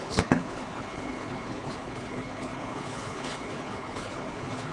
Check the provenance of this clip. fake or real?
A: fake